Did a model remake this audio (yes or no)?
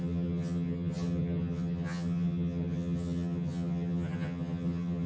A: yes